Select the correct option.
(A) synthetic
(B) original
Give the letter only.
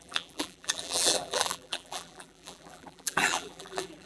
A